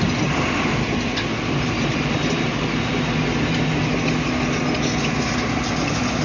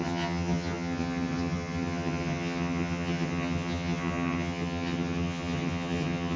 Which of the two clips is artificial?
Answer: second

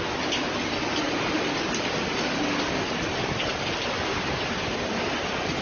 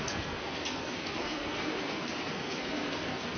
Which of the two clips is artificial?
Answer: second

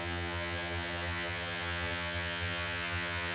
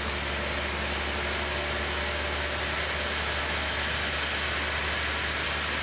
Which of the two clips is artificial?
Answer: first